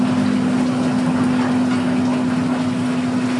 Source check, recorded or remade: recorded